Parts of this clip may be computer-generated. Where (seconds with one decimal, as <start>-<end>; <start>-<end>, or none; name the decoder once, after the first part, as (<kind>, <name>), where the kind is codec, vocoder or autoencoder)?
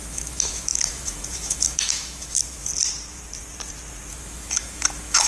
0.0-2.7 (autoencoder, DAC-VAE); 4.1-5.3